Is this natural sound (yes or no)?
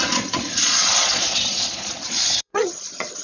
no